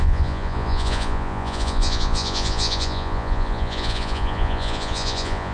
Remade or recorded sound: remade